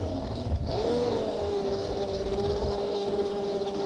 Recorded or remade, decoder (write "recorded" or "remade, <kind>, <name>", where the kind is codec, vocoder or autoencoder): remade, codec, DAC